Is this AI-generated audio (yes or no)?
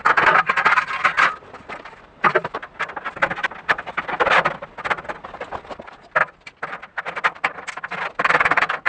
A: no